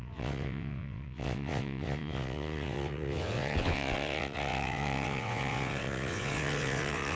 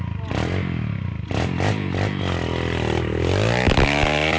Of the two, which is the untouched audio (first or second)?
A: second